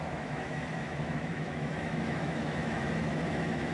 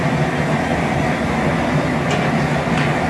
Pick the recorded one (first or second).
second